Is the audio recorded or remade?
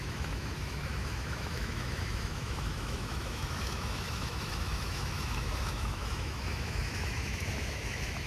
remade